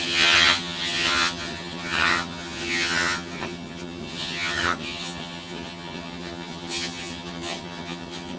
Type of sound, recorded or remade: remade